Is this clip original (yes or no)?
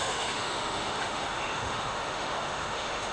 no